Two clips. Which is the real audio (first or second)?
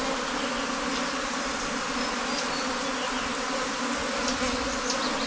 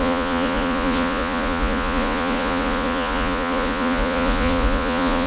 first